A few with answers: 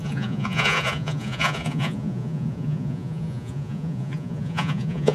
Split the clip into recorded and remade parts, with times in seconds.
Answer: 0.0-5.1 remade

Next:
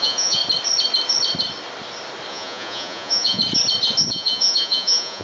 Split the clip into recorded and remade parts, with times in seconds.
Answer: 0.0-0.4 remade; 0.4-2.3 recorded; 2.3-3.4 remade; 3.4-4.1 recorded; 4.1-5.2 remade

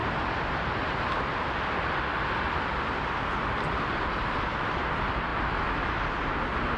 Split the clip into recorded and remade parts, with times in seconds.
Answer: 0.0-6.8 recorded